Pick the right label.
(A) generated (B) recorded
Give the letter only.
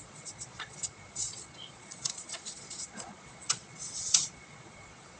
A